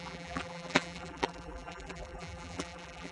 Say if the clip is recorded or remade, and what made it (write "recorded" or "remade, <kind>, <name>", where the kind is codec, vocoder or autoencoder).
remade, vocoder, BigVGAN v2